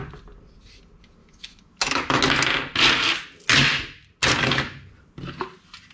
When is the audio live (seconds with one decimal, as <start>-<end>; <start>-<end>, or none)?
0.0-1.2; 2.2-5.9